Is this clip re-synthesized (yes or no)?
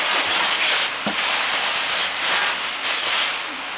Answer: no